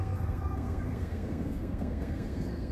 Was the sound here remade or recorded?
remade